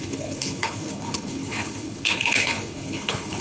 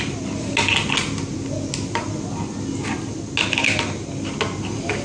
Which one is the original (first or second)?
second